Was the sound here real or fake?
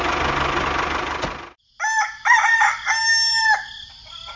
real